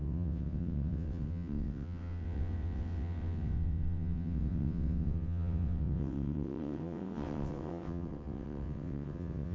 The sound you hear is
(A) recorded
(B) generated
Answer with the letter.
B